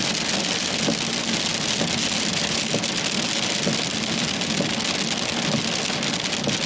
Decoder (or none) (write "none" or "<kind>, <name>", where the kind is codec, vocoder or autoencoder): none